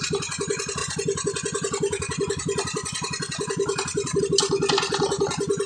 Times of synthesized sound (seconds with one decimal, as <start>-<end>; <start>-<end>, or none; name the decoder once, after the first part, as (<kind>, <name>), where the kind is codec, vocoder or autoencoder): 0.8-4.2 (vocoder, BigVGAN v2)